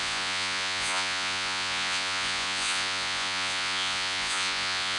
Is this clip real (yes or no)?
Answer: no